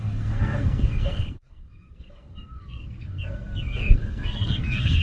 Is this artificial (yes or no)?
yes